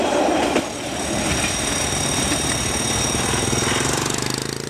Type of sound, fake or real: real